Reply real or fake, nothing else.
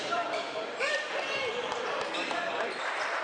fake